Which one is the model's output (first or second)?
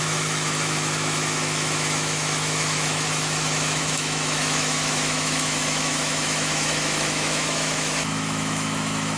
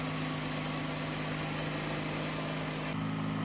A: first